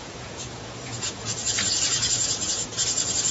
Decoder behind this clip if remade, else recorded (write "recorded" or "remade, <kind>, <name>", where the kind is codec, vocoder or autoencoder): remade, vocoder, Vocos